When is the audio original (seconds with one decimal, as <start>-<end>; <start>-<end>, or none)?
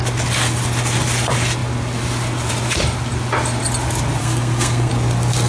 0.0-4.2; 4.9-5.5